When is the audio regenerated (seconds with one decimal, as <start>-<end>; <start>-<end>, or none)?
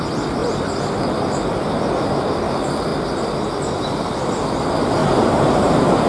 5.0-6.1